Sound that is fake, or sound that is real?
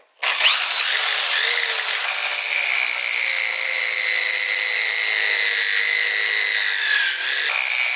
real